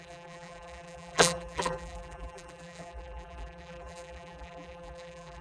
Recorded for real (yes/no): no